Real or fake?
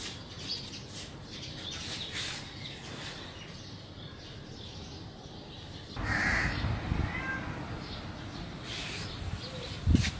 real